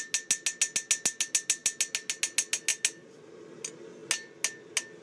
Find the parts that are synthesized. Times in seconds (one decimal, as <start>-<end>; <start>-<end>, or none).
none